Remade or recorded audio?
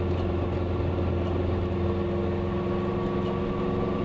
recorded